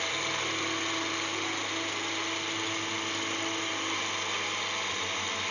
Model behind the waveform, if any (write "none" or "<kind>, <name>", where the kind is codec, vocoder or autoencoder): none